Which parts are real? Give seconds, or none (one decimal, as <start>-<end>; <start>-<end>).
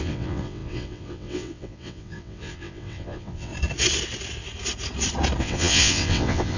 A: 3.5-5.4